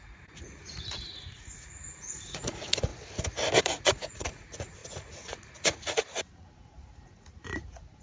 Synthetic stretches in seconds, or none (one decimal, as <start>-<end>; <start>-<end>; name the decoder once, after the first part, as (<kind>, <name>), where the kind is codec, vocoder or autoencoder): 0.0-2.9 (vocoder, Vocos); 3.6-8.0